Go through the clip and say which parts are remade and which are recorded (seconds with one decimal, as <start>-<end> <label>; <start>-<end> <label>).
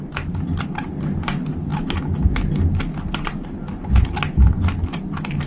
0.0-5.5 recorded